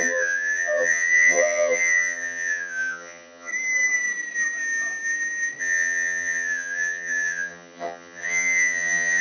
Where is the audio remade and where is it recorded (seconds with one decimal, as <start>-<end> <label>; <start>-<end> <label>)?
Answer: 0.0-3.5 remade; 3.5-5.6 recorded; 5.6-9.2 remade